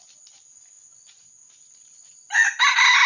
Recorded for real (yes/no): yes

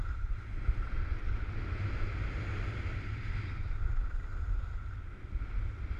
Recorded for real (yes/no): yes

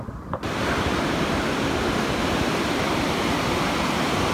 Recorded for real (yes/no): yes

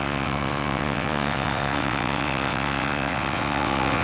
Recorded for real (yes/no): no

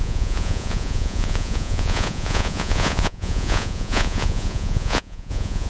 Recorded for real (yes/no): no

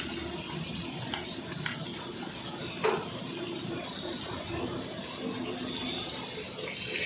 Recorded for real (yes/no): yes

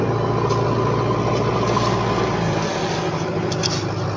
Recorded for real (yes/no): yes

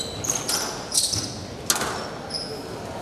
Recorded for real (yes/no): yes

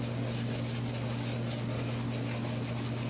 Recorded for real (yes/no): yes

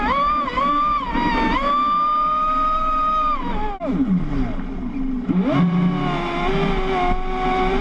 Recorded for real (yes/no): yes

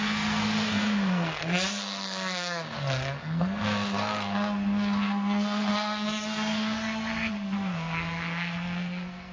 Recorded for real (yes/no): no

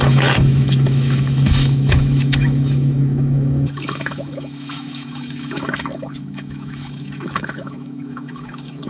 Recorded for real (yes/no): no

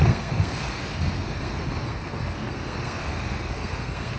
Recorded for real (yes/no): no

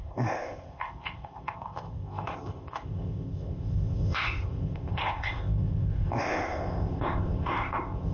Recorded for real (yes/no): no